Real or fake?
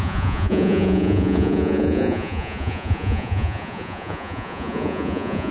fake